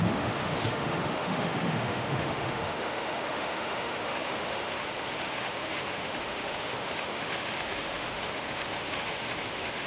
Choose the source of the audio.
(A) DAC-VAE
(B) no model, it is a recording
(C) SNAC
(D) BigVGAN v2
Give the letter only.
A